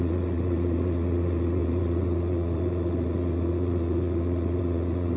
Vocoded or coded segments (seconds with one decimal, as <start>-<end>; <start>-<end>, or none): 0.0-5.2